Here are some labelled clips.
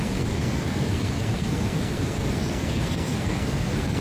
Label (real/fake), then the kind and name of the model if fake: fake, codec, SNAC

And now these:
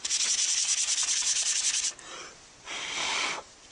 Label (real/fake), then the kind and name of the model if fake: real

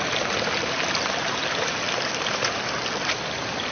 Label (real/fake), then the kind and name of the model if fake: real